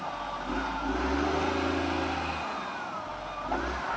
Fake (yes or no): no